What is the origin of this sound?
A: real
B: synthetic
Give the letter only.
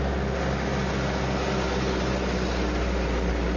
A